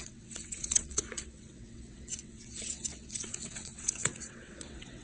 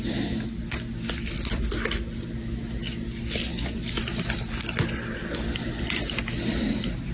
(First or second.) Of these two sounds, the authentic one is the second